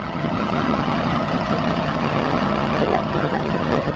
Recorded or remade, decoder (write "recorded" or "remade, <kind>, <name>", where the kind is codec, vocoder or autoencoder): remade, vocoder, HiFi-GAN